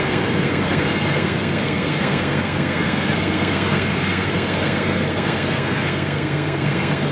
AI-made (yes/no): yes